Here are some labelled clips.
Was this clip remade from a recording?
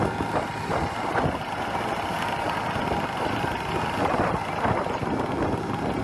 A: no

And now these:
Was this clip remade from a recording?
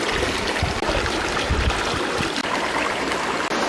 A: no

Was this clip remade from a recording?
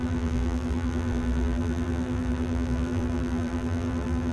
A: yes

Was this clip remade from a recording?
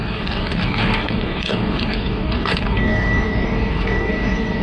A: yes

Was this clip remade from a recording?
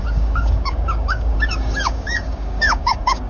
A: yes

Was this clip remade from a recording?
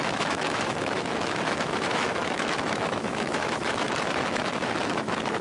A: yes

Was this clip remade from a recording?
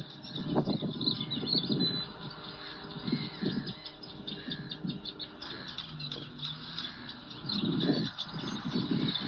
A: no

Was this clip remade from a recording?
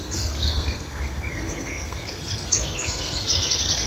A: yes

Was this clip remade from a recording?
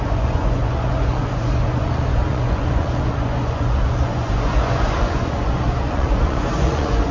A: yes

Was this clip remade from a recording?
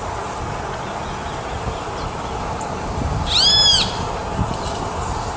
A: no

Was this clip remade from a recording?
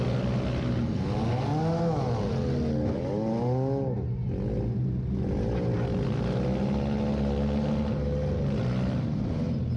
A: no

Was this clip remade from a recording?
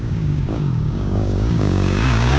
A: yes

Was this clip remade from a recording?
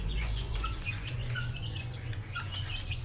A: yes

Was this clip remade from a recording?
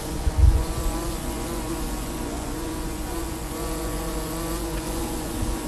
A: yes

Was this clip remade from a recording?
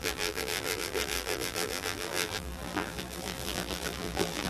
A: yes